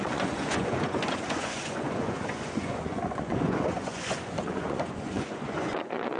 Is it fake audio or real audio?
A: fake